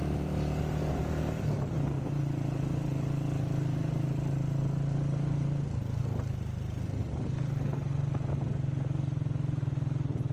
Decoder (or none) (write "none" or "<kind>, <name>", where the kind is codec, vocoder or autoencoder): none